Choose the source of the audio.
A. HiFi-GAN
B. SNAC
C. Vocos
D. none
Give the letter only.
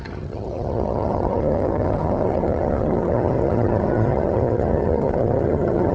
A